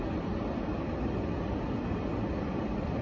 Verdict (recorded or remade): recorded